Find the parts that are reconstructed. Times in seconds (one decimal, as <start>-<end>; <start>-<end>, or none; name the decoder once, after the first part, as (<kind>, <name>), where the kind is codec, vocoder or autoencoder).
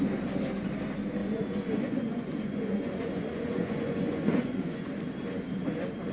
1.2-4.9 (vocoder, Vocos)